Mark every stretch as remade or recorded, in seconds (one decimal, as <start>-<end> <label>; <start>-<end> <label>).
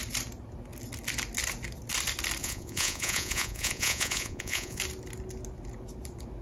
0.0-2.4 recorded; 2.4-4.8 remade; 4.8-6.4 recorded